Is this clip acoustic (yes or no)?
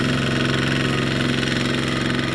yes